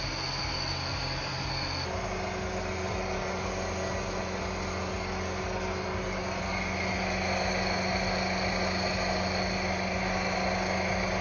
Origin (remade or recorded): recorded